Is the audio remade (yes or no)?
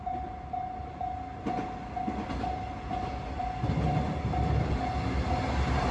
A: no